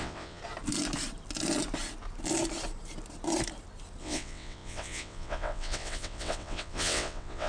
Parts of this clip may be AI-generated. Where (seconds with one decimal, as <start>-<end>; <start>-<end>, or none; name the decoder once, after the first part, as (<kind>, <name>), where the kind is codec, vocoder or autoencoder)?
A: 0.0-0.4 (vocoder, WaveNeXt); 4.0-7.5